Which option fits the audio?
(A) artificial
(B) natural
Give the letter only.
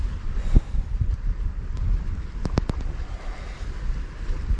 B